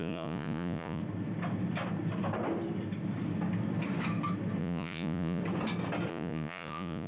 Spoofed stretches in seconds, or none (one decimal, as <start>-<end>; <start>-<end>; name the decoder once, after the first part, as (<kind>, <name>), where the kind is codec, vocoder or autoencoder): 0.0-1.0 (vocoder, Vocos); 4.6-5.4; 6.1-7.1

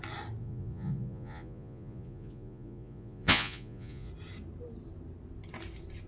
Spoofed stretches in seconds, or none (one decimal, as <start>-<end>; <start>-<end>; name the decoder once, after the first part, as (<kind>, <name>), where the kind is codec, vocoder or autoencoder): 0.4-4.1 (vocoder, Vocos)

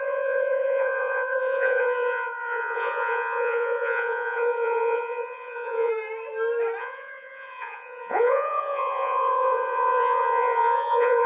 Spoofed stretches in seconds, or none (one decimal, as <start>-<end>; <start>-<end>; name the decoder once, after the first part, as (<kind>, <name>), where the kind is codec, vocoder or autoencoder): 0.0-5.9 (vocoder, Vocos); 6.8-11.3

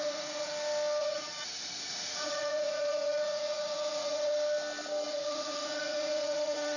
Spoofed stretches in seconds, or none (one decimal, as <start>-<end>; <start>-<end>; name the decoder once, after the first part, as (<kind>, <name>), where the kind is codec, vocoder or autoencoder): 0.0-0.5 (vocoder, Vocos); 1.0-4.3; 5.1-6.8